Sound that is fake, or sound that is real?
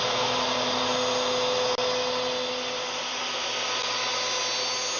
real